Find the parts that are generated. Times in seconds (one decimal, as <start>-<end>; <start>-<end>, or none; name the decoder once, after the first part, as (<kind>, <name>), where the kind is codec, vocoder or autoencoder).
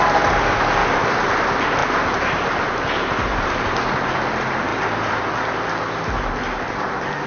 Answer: 0.8-1.3 (vocoder, BigVGAN v2); 1.8-4.1